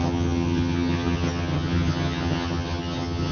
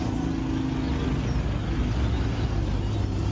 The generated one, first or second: first